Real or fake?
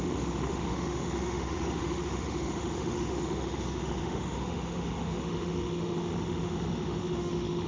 fake